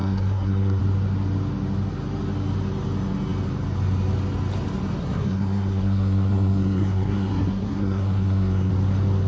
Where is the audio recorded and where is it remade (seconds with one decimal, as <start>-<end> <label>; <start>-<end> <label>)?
0.0-0.8 remade; 0.8-5.0 recorded; 5.0-8.7 remade; 8.7-9.3 recorded